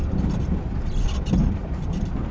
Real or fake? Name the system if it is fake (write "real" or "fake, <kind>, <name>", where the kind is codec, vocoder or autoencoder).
real